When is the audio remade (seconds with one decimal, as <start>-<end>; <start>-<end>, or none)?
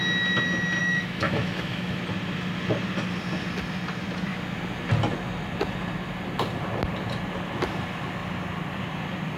0.8-2.0